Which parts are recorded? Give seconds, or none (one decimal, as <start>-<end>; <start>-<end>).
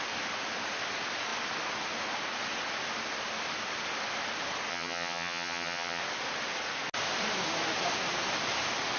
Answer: 0.0-4.7; 6.0-9.0